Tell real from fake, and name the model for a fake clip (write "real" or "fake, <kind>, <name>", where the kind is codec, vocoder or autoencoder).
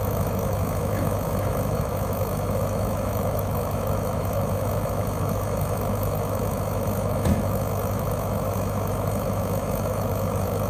fake, autoencoder, DAC-VAE